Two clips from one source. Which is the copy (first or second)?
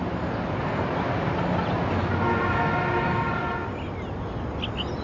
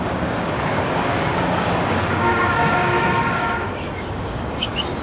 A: second